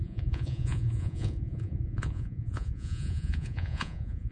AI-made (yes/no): yes